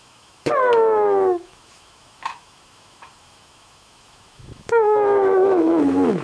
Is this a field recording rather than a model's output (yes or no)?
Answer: no